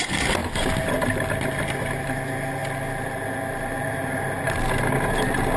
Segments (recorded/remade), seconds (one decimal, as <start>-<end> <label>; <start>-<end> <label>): 0.0-5.6 recorded